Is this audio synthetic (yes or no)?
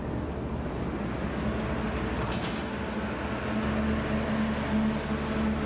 no